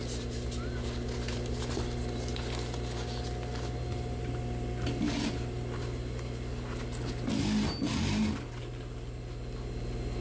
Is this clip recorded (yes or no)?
yes